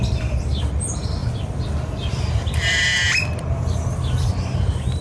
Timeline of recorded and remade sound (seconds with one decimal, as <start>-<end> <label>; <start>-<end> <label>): 0.0-1.2 remade; 1.2-2.2 recorded; 2.2-2.9 remade; 2.9-5.0 recorded

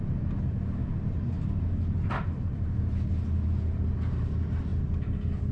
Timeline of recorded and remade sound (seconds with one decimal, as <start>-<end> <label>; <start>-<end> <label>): 0.0-5.5 recorded

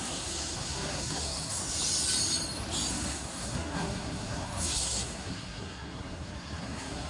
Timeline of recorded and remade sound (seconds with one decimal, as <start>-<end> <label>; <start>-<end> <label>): 0.0-1.6 remade; 1.6-2.9 recorded; 2.9-7.1 remade

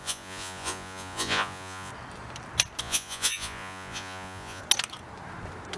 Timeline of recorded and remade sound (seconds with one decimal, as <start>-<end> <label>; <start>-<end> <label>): 0.0-1.9 remade; 1.9-2.8 recorded; 2.8-4.6 remade; 4.6-5.8 recorded

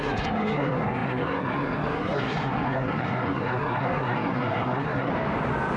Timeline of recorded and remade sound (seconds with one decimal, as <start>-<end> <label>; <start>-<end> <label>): 0.0-5.1 remade; 5.1-5.8 recorded

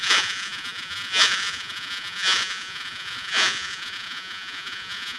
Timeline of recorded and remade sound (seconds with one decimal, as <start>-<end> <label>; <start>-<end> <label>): 0.0-5.2 remade

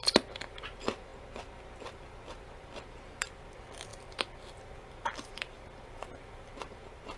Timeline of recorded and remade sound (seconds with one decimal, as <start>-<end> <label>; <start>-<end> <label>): 0.0-1.1 remade; 1.1-1.8 recorded; 1.8-7.2 remade